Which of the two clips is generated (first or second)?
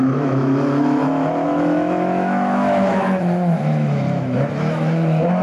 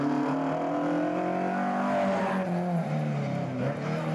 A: first